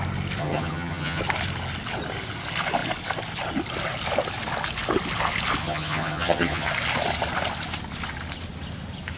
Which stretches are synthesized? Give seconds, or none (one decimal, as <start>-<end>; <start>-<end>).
0.4-1.2; 5.6-6.7